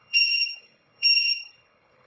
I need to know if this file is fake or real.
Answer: fake